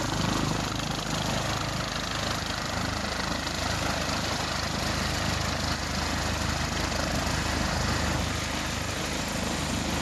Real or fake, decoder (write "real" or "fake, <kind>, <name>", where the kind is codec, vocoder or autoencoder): real